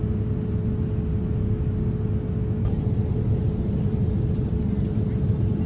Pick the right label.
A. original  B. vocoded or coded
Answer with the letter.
A